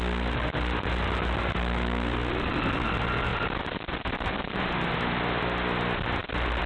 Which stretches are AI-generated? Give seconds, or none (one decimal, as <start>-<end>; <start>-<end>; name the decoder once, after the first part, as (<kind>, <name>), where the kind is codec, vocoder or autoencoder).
none